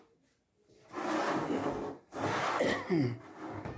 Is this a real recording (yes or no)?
yes